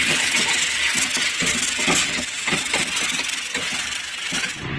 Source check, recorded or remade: recorded